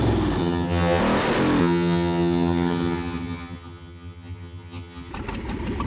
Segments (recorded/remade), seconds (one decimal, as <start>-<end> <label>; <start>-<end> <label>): 0.0-0.4 recorded; 0.4-1.0 remade; 1.0-1.6 recorded; 1.6-5.1 remade; 5.1-5.9 recorded